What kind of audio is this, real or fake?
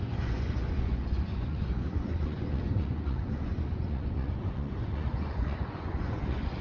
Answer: fake